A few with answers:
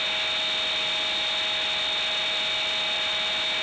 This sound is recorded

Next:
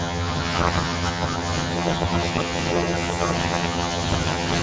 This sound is remade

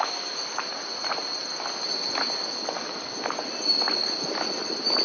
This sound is recorded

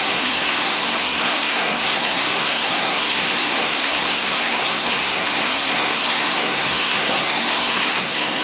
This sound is remade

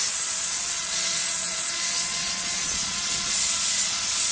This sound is remade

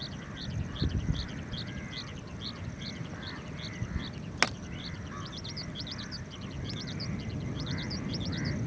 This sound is recorded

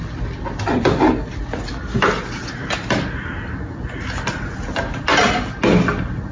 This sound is recorded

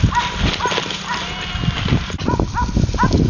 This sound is recorded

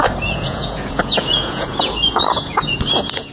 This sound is remade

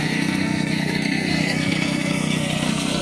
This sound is remade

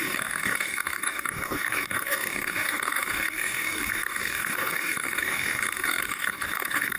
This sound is remade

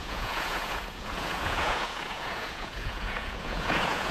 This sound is remade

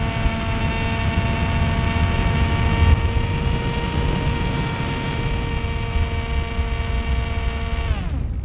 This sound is recorded